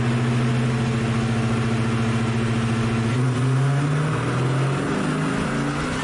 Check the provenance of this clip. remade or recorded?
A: recorded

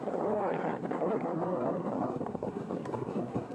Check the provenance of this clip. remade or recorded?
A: remade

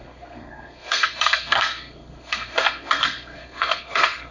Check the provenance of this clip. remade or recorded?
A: remade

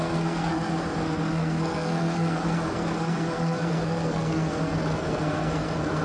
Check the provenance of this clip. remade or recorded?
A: remade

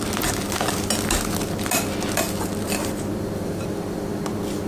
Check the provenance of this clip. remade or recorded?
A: recorded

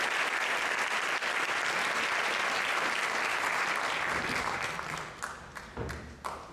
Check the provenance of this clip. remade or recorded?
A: recorded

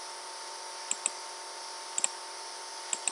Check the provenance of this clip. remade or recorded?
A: recorded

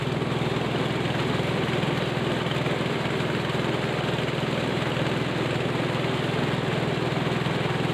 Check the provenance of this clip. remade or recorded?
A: recorded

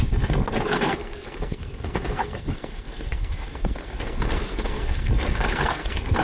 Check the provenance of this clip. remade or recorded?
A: remade